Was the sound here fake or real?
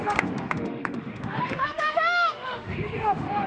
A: fake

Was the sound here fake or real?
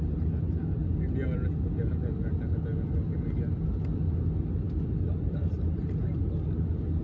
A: real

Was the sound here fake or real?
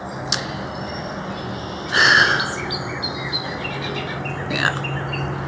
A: real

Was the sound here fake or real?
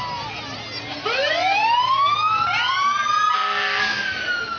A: real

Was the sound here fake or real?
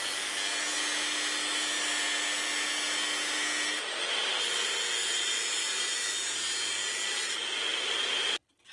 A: real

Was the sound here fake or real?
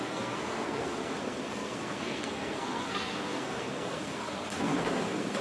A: fake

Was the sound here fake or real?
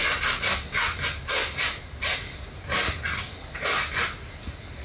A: real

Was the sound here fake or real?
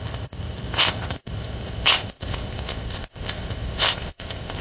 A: fake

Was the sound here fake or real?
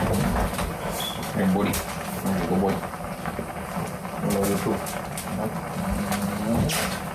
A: real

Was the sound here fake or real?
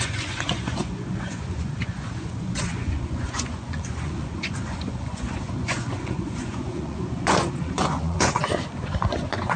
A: fake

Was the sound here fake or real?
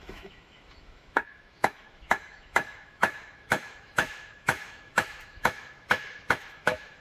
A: fake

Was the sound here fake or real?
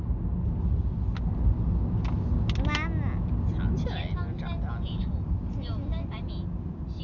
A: real